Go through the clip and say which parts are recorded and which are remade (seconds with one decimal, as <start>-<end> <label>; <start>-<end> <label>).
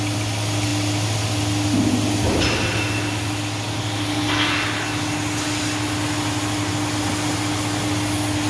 0.0-8.5 recorded